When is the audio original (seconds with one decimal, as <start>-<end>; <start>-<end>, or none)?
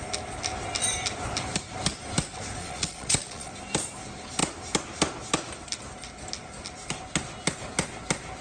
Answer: 0.0-2.6; 3.5-8.4